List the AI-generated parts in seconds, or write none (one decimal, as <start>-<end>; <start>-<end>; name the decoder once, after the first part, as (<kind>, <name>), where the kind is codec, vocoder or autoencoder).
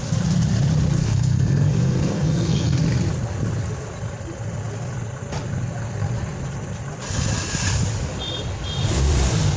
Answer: 1.0-2.8 (codec, SNAC)